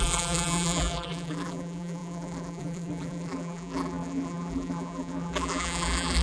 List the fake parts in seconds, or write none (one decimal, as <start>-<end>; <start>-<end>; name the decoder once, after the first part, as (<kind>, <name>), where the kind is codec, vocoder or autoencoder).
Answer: 0.0-6.2 (vocoder, BigVGAN v2)